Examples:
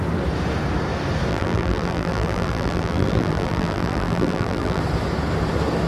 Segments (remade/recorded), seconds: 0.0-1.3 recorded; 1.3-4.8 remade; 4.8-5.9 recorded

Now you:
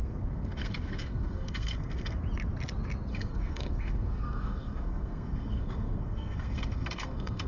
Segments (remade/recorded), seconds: 0.0-2.2 remade; 2.2-3.1 recorded; 3.1-7.5 remade

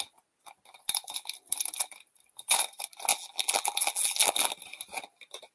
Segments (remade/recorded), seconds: 0.0-3.1 recorded; 3.1-4.5 remade; 4.5-5.5 recorded

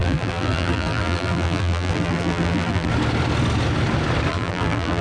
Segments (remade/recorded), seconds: 0.0-2.9 remade; 2.9-4.3 recorded; 4.3-5.0 remade